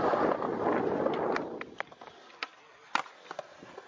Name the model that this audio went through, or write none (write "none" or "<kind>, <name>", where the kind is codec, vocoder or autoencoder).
none